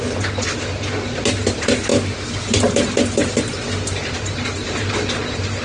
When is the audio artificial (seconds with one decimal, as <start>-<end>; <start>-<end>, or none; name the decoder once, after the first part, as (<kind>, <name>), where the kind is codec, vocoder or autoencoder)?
none